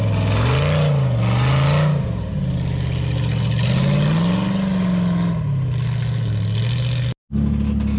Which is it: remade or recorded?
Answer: recorded